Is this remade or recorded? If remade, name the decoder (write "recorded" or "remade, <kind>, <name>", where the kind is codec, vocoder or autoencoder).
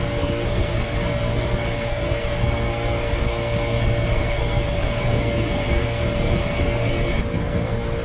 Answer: remade, codec, SNAC